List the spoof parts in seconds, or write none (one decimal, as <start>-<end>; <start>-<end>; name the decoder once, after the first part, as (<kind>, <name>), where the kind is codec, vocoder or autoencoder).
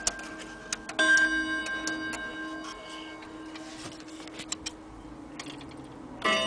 none